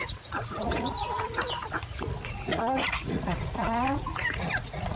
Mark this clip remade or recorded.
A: remade